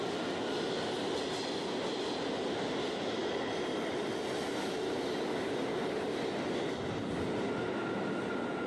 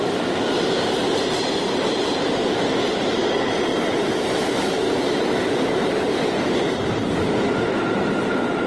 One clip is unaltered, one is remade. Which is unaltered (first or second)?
first